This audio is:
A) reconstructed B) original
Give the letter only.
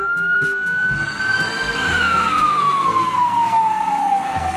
A